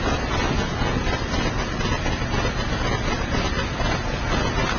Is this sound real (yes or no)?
yes